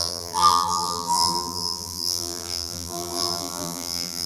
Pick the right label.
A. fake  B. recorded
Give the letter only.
A